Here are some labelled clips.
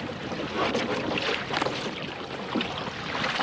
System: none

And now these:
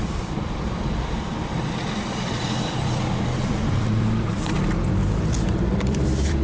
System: vocoder, BigVGAN v2